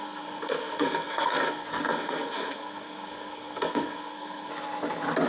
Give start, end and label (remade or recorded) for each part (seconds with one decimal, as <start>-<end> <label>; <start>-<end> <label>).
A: 0.0-4.5 remade; 4.5-5.3 recorded